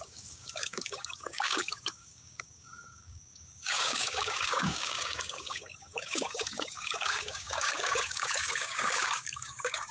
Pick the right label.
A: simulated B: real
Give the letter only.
A